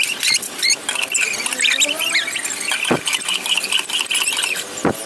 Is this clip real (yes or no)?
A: yes